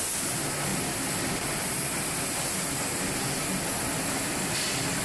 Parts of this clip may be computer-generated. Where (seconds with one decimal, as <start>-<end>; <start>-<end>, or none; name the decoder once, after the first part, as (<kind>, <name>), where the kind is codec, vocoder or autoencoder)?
none